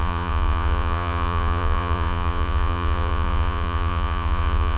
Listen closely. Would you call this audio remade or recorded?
remade